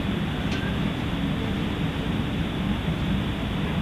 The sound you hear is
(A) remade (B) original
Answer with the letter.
B